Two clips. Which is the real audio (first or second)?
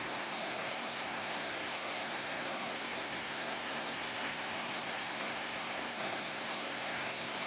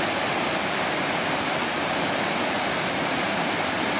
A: second